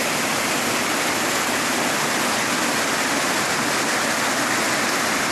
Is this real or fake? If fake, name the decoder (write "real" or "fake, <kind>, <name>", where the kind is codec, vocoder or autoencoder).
real